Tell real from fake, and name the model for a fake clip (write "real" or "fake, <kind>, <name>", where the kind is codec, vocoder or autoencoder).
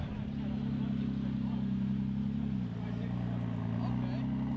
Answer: real